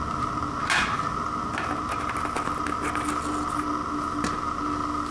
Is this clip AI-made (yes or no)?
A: no